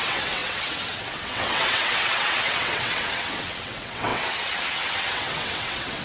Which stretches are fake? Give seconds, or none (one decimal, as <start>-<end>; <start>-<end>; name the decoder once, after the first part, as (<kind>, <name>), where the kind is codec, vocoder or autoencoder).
0.0-6.0 (vocoder, WaveNeXt)